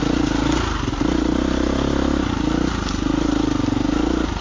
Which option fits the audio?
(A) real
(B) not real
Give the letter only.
A